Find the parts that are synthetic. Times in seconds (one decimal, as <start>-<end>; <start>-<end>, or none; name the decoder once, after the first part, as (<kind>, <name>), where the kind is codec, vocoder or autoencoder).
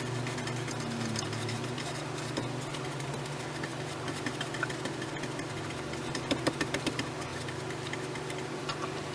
0.0-3.7 (vocoder, BigVGAN v2); 6.2-7.3; 8.6-9.1